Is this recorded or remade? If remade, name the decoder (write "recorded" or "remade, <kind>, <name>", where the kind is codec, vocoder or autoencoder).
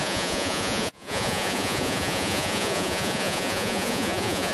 remade, vocoder, Vocos